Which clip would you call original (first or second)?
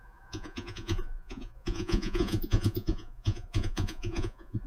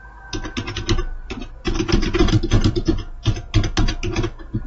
second